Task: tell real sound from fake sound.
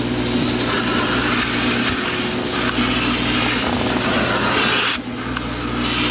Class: real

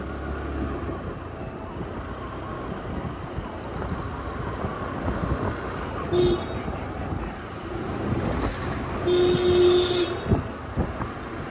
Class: real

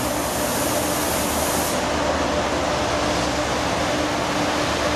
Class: real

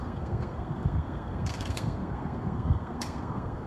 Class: fake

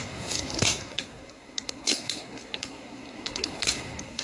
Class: fake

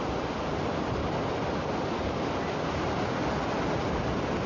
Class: real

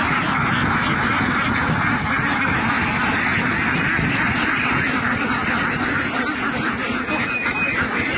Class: real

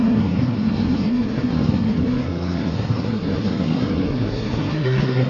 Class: fake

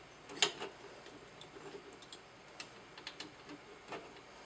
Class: real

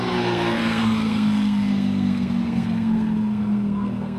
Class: fake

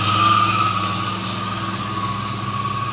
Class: real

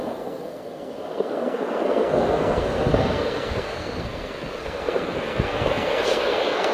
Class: fake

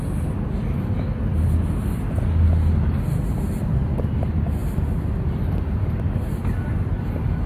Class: real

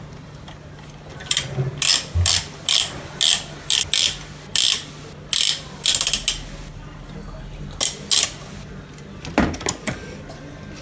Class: real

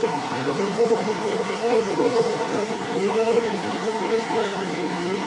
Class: fake